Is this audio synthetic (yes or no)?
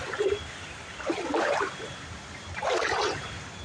yes